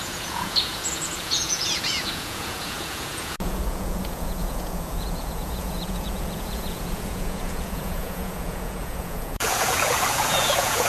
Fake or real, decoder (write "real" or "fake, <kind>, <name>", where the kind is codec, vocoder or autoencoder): fake, vocoder, Vocos